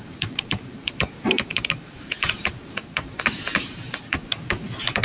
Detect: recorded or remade remade